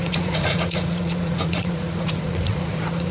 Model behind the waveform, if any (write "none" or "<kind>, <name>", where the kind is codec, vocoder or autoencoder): vocoder, Vocos